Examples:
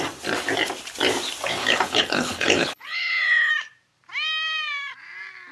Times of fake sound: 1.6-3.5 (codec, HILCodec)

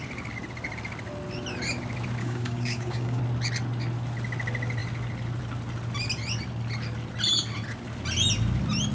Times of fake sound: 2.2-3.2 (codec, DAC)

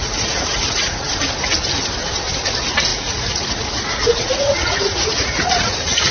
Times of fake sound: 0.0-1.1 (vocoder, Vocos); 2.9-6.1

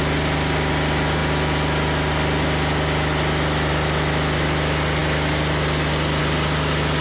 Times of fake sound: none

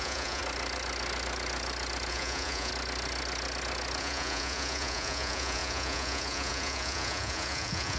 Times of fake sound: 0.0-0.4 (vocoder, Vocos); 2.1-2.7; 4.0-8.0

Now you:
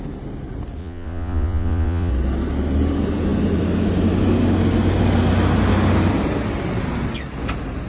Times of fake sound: 0.8-2.1 (vocoder, Vocos)